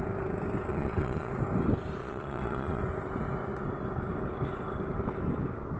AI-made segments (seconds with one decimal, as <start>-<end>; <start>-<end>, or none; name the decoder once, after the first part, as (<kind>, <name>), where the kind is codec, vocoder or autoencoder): 0.7-1.3 (vocoder, Vocos); 2.0-2.8